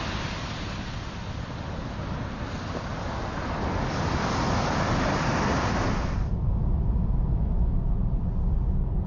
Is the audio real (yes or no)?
yes